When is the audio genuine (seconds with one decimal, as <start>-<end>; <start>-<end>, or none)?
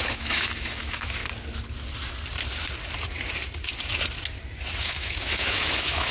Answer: 1.2-4.8